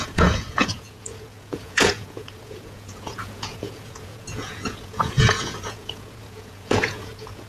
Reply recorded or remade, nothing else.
remade